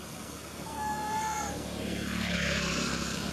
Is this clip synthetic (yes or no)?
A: yes